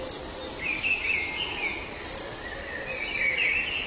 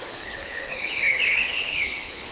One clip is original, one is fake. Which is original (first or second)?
first